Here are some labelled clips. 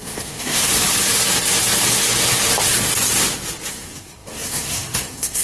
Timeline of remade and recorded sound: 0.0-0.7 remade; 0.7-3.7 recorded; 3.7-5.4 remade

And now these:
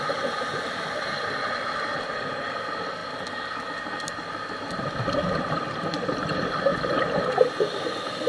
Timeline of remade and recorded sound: 0.0-3.0 remade; 3.0-5.3 recorded; 5.3-8.3 remade